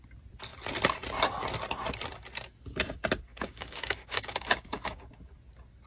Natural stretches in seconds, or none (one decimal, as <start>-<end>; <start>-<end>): 0.0-3.3; 5.1-5.9